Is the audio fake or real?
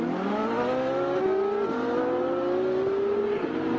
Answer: real